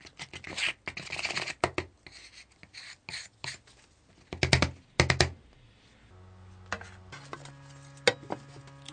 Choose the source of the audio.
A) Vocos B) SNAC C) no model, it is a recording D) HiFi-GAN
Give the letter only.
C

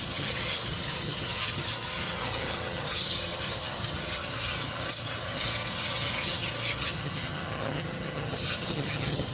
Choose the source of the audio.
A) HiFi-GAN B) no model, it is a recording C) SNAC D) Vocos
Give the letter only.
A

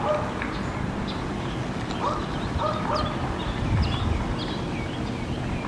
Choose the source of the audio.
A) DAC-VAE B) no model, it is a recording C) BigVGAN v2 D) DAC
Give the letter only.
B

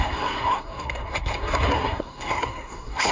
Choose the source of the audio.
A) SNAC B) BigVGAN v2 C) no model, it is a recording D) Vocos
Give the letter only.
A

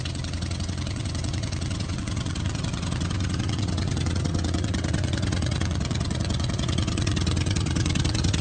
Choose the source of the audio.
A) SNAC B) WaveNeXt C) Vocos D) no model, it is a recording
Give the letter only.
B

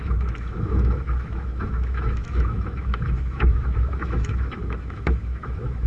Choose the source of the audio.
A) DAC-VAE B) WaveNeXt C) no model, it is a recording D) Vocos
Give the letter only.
A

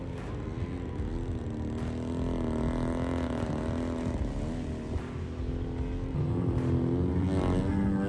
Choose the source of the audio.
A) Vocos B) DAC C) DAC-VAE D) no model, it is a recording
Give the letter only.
D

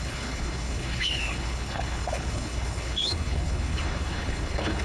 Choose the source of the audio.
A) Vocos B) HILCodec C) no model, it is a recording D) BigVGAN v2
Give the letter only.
B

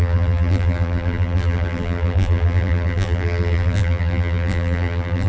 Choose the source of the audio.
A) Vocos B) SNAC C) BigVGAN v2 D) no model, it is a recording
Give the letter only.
C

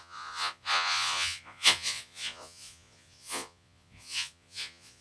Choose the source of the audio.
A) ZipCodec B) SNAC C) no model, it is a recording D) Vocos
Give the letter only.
D